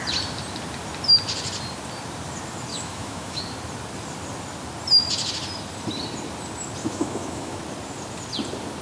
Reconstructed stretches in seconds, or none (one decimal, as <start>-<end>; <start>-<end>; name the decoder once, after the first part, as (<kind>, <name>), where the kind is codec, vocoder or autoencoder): 2.7-3.4 (autoencoder, DAC-VAE); 6.8-7.6